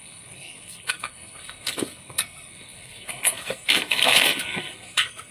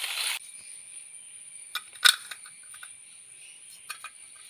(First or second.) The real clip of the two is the second